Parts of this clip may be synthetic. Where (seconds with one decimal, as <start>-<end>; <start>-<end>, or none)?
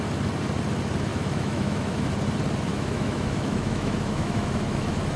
1.1-2.1; 2.7-5.2